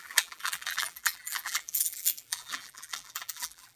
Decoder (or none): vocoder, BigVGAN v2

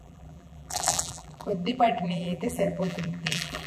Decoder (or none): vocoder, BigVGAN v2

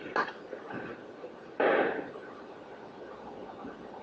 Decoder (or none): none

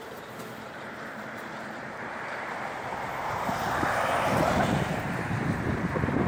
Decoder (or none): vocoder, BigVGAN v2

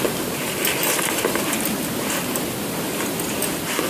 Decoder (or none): vocoder, BigVGAN v2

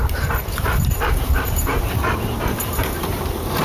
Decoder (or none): vocoder, BigVGAN v2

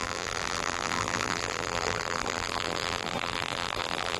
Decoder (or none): vocoder, BigVGAN v2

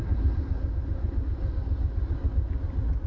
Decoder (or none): none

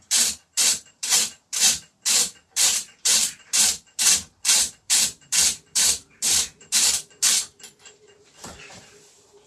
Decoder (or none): vocoder, BigVGAN v2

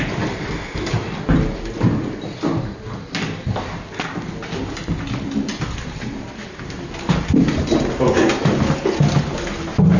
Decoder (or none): none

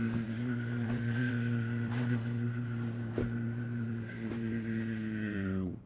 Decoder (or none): vocoder, BigVGAN v2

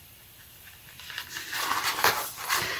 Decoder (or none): vocoder, BigVGAN v2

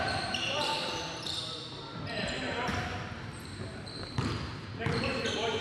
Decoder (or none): vocoder, BigVGAN v2